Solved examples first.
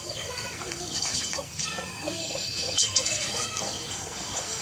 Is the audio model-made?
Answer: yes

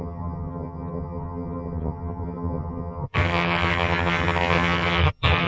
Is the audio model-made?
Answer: yes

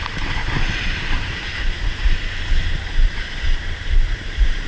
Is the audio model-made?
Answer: yes